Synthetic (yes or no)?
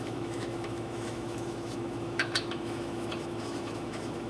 yes